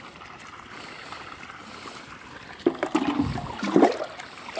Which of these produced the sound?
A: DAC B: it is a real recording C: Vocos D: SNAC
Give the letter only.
B